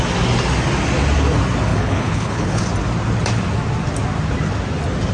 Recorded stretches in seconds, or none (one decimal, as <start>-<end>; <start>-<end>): 0.0-1.7; 2.6-5.1